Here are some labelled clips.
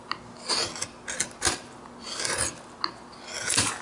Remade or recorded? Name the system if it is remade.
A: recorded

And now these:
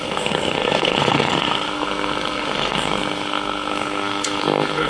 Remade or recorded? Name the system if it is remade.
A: remade, codec, SNAC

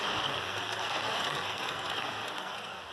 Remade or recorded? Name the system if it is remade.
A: remade, codec, SNAC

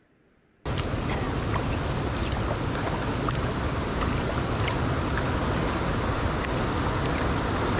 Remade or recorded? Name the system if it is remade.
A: recorded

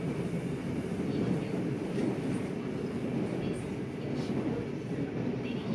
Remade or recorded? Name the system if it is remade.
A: recorded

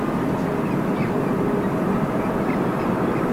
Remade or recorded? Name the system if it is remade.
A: recorded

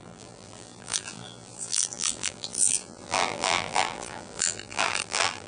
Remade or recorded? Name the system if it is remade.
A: remade, vocoder, BigVGAN v2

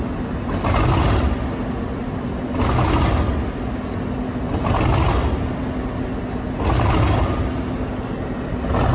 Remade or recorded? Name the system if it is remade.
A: recorded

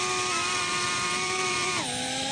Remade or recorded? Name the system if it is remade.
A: remade, vocoder, BigVGAN v2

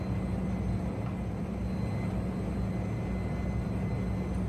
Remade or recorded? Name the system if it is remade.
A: recorded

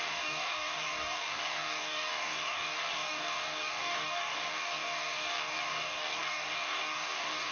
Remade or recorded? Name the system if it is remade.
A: remade, codec, DAC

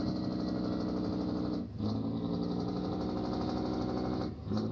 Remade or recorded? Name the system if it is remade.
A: recorded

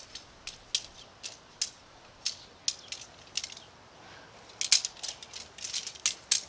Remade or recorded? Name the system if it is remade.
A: recorded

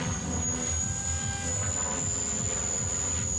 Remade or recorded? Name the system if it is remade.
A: recorded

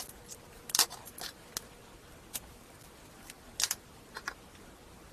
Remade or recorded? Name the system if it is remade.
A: recorded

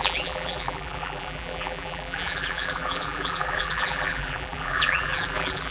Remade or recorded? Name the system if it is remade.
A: remade, vocoder, BigVGAN v2